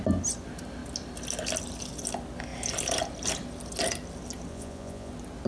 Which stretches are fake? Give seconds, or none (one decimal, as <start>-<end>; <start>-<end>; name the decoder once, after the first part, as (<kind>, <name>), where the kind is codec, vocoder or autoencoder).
4.5-5.1 (vocoder, Vocos)